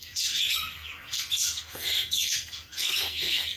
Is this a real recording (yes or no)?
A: no